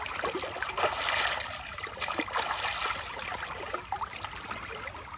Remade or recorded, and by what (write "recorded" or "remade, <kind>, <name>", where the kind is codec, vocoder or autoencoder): recorded